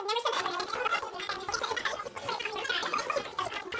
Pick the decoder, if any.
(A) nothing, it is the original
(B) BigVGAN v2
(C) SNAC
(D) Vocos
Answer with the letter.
A